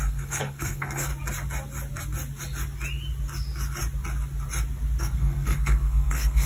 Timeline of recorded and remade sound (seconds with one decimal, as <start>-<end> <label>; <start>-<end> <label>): 0.0-1.1 remade; 1.1-5.0 recorded; 5.0-6.5 remade